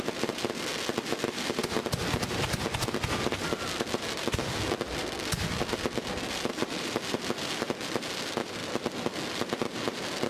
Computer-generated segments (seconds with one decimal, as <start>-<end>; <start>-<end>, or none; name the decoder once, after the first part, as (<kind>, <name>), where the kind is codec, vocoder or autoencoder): none